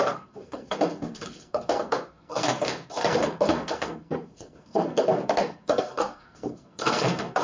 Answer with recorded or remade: remade